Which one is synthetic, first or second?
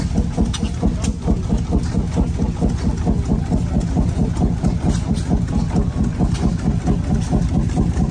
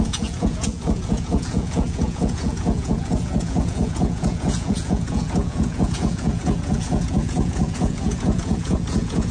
second